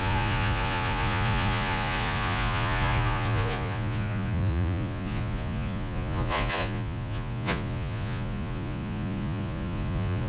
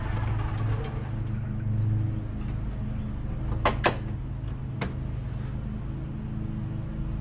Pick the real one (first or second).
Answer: second